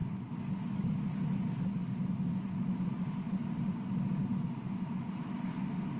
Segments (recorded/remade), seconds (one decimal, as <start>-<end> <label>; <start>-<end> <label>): 0.0-6.0 recorded